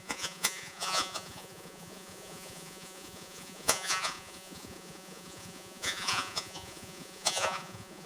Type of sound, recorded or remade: remade